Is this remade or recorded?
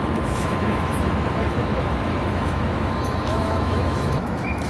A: remade